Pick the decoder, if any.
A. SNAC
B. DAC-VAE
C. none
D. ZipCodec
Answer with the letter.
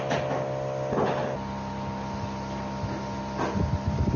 C